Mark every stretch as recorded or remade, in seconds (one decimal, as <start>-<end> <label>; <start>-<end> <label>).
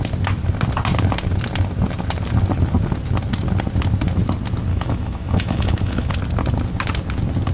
0.0-4.7 recorded; 4.7-6.1 remade; 6.1-7.5 recorded